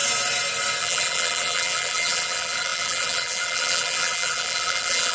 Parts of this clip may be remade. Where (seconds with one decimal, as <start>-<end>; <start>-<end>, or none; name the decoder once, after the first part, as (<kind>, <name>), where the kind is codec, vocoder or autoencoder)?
0.8-5.1 (vocoder, BigVGAN v2)